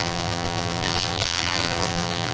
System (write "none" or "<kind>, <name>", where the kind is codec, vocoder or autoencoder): vocoder, BigVGAN v2